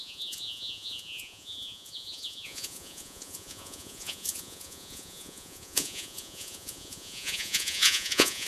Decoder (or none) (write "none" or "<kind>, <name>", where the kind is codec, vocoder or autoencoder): vocoder, Vocos